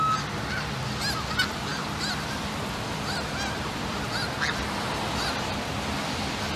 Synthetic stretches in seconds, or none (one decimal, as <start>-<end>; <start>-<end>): 1.7-5.7